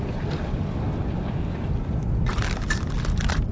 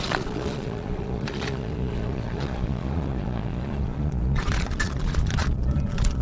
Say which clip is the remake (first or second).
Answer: second